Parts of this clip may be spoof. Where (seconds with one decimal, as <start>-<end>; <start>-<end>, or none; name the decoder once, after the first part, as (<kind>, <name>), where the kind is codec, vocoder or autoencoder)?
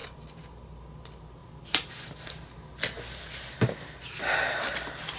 none